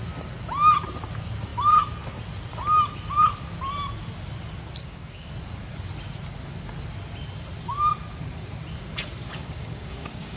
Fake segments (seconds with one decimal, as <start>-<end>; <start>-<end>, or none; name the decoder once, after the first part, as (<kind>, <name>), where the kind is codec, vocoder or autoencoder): 4.8-5.3 (codec, DAC); 9.3-10.4